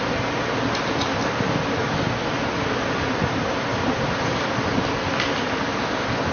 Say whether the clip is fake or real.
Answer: real